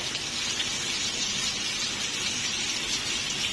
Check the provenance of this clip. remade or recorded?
recorded